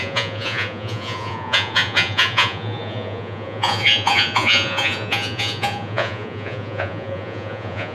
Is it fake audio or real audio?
fake